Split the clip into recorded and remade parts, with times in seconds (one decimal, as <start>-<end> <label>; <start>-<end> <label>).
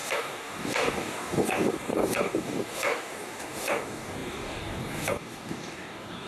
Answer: 0.0-6.3 remade